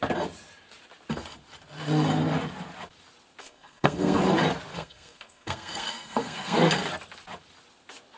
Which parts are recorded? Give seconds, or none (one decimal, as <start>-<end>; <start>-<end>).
0.0-3.4; 4.2-4.7; 6.7-8.2